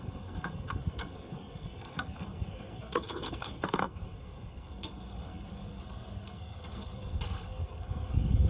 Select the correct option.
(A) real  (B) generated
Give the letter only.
B